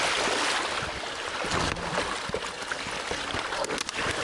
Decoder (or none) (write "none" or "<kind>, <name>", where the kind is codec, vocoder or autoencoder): none